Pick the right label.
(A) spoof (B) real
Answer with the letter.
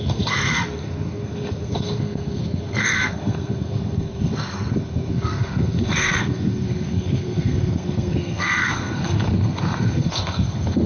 A